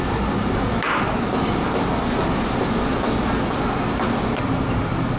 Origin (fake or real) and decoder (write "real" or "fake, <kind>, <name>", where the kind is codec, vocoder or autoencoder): real